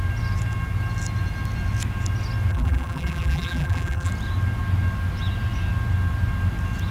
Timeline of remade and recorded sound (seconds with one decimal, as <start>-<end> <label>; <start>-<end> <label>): 0.0-2.5 recorded; 2.5-4.1 remade; 4.1-6.9 recorded